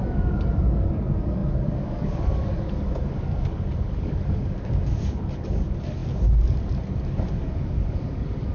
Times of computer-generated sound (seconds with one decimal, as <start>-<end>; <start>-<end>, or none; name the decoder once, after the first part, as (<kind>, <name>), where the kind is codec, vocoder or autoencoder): 0.0-8.5 (codec, DAC)